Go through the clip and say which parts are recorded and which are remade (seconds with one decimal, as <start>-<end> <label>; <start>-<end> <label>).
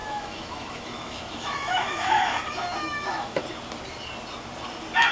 0.0-2.4 remade; 2.4-2.8 recorded; 2.8-3.4 remade; 3.4-5.1 recorded